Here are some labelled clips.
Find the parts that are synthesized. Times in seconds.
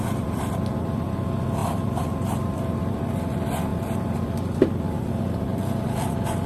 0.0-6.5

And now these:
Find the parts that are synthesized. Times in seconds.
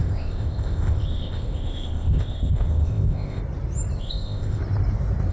0.0-3.4; 4.0-4.6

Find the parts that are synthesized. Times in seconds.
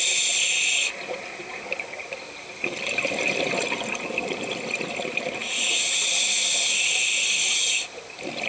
5.4-6.4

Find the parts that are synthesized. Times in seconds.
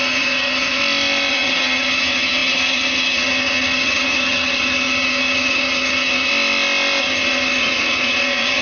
0.0-0.8; 1.3-6.3; 7.0-8.6